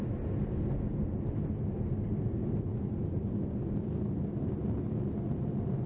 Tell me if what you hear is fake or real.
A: real